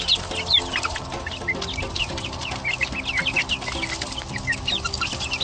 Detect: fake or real real